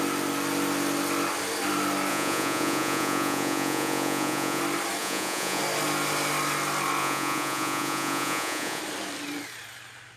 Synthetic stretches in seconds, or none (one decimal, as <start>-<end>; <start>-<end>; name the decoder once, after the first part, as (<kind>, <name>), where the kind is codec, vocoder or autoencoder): 2.1-4.6 (vocoder, Vocos); 5.0-5.6; 7.0-8.8